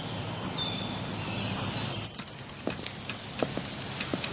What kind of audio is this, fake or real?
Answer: real